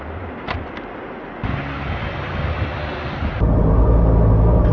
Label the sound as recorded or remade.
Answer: recorded